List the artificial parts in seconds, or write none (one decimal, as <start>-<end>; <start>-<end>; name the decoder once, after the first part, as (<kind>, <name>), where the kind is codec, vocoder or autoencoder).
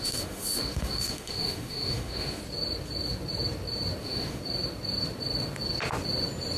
0.0-2.4 (autoencoder, DAC-VAE); 4.0-4.4